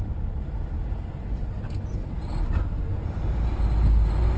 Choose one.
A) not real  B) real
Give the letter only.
B